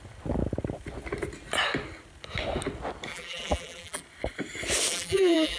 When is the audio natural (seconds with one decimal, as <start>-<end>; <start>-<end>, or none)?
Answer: 0.0-3.1; 4.0-4.9